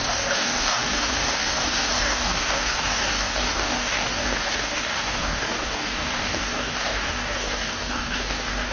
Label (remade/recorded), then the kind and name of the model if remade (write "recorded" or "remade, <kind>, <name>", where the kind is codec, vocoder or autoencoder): remade, codec, DAC